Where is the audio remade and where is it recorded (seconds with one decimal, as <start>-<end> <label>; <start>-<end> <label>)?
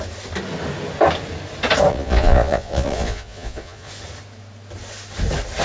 0.0-1.9 recorded; 1.9-3.9 remade; 3.9-5.6 recorded